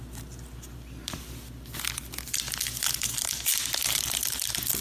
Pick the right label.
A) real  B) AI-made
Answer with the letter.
A